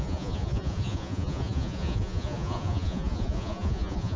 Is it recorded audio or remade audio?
remade